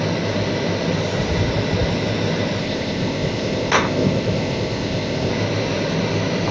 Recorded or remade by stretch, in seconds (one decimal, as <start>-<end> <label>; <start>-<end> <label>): 0.0-2.6 recorded; 2.6-5.3 remade; 5.3-6.5 recorded

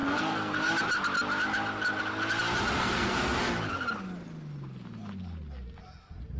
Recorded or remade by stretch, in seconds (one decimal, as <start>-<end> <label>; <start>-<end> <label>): 0.0-0.7 remade; 0.7-2.8 recorded; 2.8-3.4 remade; 3.4-6.4 recorded

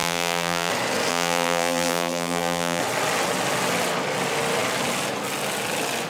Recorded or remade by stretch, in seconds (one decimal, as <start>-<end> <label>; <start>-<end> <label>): 0.0-0.7 remade; 0.7-1.1 recorded; 1.1-2.8 remade; 2.8-6.1 recorded

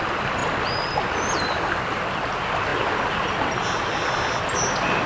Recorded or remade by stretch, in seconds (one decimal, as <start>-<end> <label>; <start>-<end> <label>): 0.0-5.1 recorded

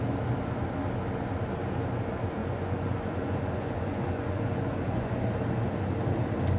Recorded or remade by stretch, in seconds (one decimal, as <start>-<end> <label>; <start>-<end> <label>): 0.0-2.4 recorded; 2.4-5.2 remade; 5.2-6.6 recorded